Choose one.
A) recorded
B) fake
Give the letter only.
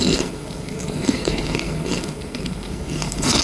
B